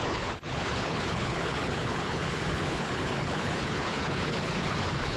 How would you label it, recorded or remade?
remade